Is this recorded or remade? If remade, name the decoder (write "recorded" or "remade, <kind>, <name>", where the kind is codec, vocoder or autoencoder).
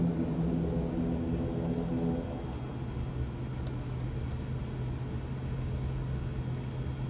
recorded